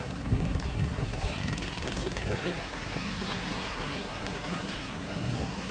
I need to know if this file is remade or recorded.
remade